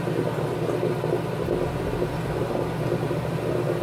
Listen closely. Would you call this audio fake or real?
real